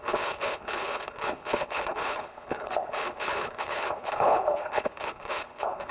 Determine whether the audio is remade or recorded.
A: remade